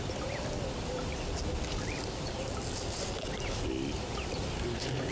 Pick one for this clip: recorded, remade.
recorded